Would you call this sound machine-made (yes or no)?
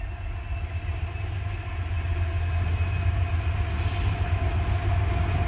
no